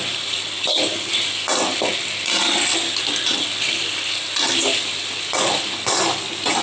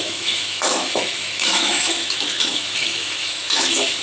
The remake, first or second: second